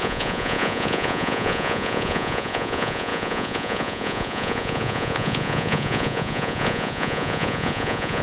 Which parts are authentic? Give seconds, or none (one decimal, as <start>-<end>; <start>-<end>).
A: none